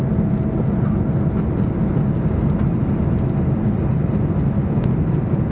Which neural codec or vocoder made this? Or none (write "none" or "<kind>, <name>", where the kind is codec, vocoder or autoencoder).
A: none